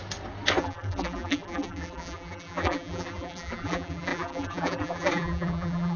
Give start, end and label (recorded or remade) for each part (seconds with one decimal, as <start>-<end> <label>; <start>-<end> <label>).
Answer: 0.0-0.6 recorded; 0.6-6.0 remade